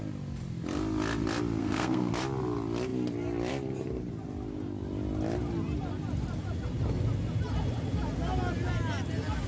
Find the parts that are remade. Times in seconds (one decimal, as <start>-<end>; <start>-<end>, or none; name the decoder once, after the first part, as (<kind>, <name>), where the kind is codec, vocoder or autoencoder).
1.6-2.1 (codec, SNAC)